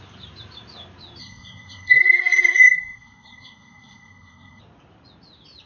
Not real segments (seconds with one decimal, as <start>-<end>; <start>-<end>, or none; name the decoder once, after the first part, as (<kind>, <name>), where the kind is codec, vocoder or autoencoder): 1.2-4.6 (codec, SNAC)